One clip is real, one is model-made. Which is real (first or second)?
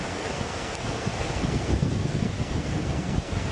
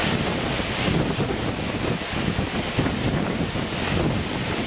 second